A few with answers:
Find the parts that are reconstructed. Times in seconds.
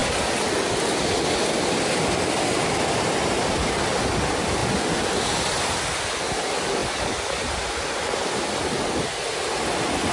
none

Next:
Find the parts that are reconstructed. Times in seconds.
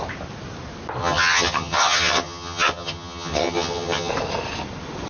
1.0-4.1 (vocoder, HiFi-GAN)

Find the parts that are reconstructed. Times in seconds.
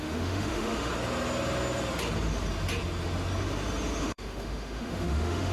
0.0-0.9 (autoencoder, DAC-VAE); 4.0-5.5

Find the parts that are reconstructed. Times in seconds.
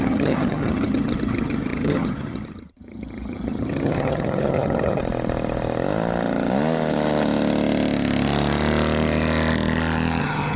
0.0-5.0 (vocoder, HiFi-GAN); 10.2-10.6